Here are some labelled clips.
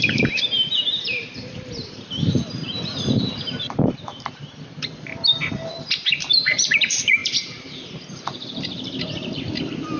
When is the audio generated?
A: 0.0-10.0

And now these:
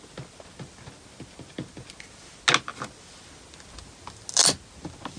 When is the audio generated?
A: none

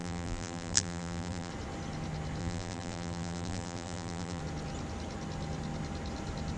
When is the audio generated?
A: 0.0-1.5; 2.4-4.4

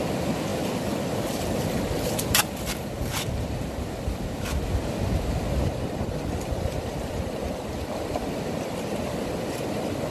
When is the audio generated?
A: 0.0-4.8